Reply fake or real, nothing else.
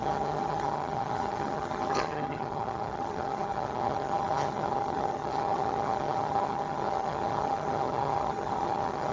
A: fake